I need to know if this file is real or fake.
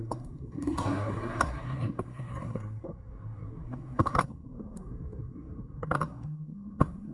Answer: fake